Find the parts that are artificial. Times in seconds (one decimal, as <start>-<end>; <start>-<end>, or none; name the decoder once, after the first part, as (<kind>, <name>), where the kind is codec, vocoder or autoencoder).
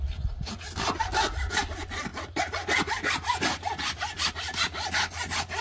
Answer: none